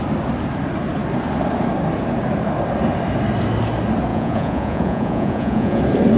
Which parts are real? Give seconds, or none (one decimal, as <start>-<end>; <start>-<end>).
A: 0.0-4.1; 5.8-6.2